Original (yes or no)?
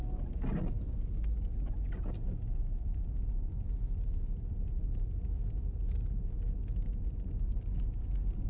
yes